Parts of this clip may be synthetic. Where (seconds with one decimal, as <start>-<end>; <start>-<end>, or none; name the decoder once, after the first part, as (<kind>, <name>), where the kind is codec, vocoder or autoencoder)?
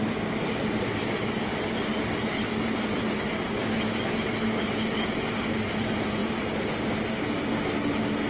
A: none